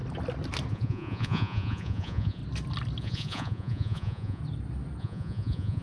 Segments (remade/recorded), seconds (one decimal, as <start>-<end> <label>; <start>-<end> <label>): 0.0-0.7 recorded; 0.7-2.4 remade; 2.4-3.0 recorded; 3.0-4.4 remade; 4.4-5.0 recorded; 5.0-5.8 remade